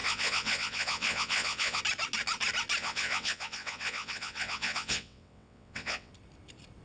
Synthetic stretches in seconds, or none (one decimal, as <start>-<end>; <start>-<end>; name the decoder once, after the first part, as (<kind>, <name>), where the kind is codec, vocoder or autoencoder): 0.0-1.8 (vocoder, WaveNeXt); 2.8-6.1